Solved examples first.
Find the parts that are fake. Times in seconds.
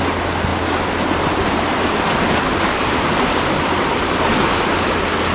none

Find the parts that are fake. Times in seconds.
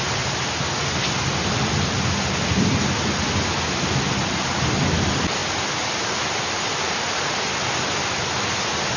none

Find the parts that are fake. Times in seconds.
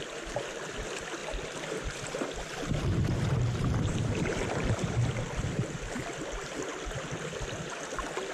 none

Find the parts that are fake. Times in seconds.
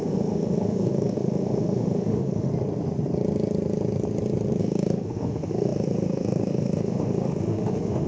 0.0-2.5 (autoencoder, DAC-VAE); 4.6-8.1